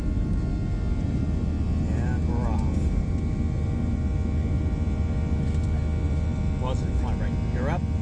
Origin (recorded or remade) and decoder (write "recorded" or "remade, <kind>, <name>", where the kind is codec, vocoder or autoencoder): recorded